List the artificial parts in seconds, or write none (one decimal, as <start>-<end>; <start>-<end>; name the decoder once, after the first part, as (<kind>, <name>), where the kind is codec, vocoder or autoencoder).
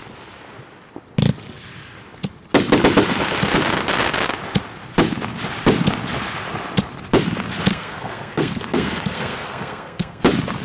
7.7-10.2 (codec, SNAC)